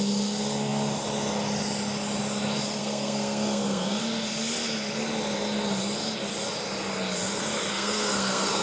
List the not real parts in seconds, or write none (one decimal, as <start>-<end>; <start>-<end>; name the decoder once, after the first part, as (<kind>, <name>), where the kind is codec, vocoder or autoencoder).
2.8-4.0 (codec, SNAC); 7.7-8.6